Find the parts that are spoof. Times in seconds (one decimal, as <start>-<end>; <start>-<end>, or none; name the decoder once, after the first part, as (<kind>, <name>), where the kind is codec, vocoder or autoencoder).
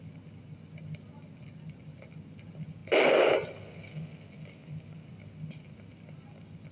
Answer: none